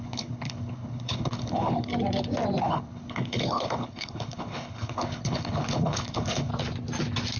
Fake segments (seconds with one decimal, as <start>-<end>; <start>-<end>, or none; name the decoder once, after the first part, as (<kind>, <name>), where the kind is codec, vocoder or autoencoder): 0.0-1.9 (codec, HILCodec); 2.6-6.5